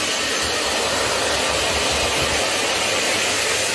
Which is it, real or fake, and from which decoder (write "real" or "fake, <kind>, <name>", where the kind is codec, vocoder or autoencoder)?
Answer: real